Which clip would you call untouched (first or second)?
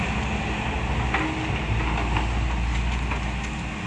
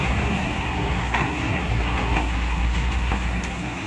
first